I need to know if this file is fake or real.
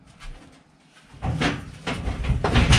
real